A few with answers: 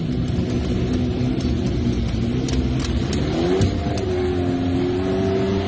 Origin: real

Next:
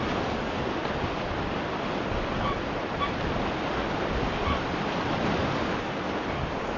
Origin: real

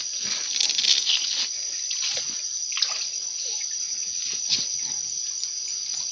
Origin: real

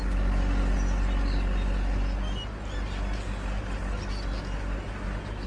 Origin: real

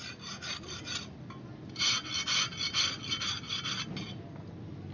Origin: real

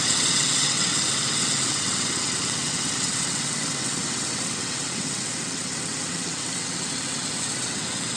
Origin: fake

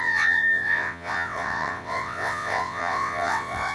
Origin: fake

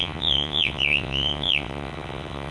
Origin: fake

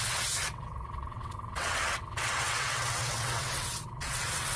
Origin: fake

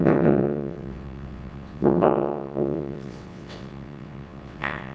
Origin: fake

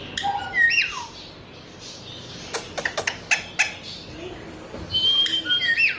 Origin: real